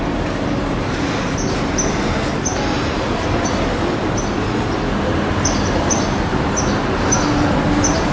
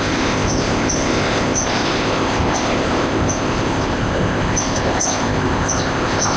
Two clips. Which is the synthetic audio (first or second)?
second